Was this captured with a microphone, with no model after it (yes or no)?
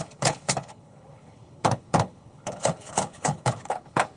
no